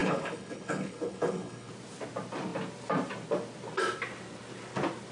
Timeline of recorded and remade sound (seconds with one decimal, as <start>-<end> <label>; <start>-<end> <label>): 0.0-1.7 remade; 1.7-5.1 recorded

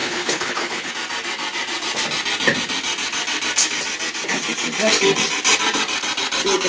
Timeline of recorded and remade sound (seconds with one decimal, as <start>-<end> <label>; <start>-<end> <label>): 0.0-0.9 remade; 0.9-6.7 recorded

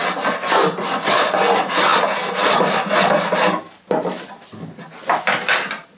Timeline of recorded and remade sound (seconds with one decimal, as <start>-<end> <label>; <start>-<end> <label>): 0.0-6.0 recorded

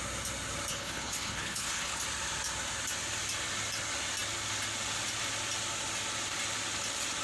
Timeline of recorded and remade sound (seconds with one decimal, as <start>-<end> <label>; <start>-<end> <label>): 0.0-0.7 recorded; 0.7-2.0 remade; 2.0-7.2 recorded

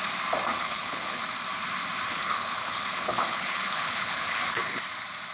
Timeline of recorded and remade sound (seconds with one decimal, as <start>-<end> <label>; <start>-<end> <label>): 0.0-0.6 recorded; 0.6-1.2 remade; 1.2-2.1 recorded; 2.1-4.8 remade; 4.8-5.3 recorded

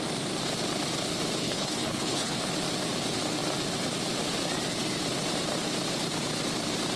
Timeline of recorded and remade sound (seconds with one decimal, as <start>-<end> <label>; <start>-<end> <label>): 0.0-1.4 recorded; 1.4-2.5 remade; 2.5-7.0 recorded